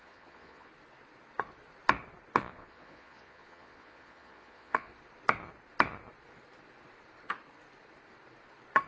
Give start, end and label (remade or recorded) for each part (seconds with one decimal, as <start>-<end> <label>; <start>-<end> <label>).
0.0-0.7 remade; 0.7-2.4 recorded; 2.4-4.9 remade; 4.9-8.9 recorded